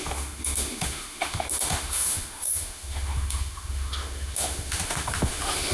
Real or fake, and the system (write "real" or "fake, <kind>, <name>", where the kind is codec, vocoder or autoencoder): fake, autoencoder, DAC-VAE